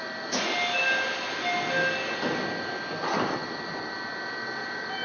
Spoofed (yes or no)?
no